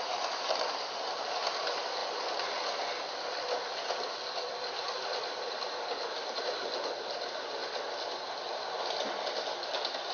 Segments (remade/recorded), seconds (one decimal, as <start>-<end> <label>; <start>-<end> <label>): 0.0-10.1 recorded